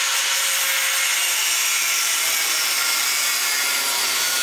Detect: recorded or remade recorded